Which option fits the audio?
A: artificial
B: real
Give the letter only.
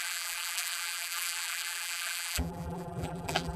A